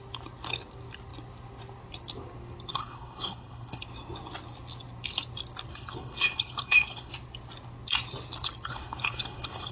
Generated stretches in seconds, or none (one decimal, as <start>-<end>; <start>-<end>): 2.7-3.8; 5.7-7.1; 8.7-9.7